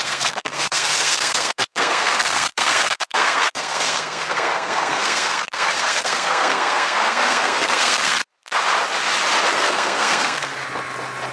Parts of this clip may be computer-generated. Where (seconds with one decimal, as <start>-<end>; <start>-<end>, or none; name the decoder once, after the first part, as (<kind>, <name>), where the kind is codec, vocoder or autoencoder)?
0.0-8.2 (codec, SNAC); 9.5-10.6